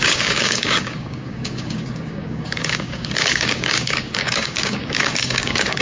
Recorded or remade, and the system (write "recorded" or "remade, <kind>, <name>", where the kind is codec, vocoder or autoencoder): remade, codec, DAC